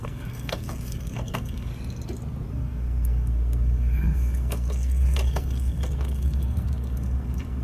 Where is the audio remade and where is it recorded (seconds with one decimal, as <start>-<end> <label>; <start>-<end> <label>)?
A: 0.0-1.7 remade; 1.7-2.5 recorded; 2.5-7.6 remade